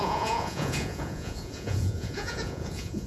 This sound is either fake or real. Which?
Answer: fake